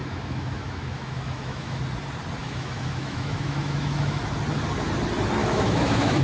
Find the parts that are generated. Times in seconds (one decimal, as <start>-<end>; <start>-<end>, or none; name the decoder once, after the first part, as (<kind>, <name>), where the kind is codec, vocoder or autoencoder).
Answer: 0.0-1.8 (autoencoder, DAC-VAE); 2.4-4.2; 5.4-6.2